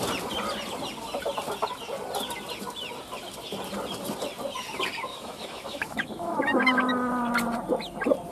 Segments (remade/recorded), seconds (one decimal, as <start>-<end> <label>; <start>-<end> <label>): 0.0-5.1 recorded; 5.1-6.9 remade; 6.9-8.3 recorded